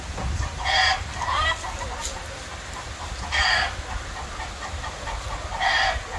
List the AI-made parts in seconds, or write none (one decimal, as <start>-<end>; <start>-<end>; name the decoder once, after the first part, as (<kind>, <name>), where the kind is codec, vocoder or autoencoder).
none